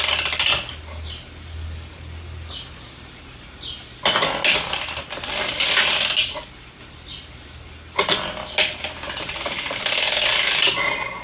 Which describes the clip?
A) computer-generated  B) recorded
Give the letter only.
B